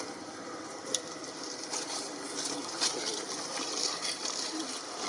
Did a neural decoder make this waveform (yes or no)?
no